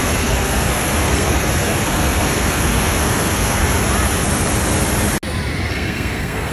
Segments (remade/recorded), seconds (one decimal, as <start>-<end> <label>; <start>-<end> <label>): 0.0-3.6 remade; 3.6-5.7 recorded; 5.7-6.5 remade